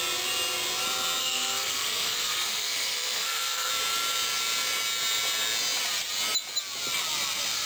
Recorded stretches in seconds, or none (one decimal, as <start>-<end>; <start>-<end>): 0.0-1.2; 3.7-7.7